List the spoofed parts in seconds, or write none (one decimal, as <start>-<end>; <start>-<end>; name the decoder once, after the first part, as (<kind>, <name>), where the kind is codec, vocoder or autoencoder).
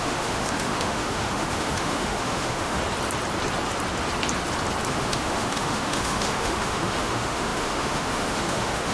0.0-2.8 (autoencoder, DAC-VAE); 4.9-8.9